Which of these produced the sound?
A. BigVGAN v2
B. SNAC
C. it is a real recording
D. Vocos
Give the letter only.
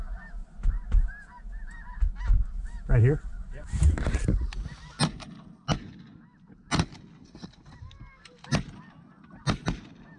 C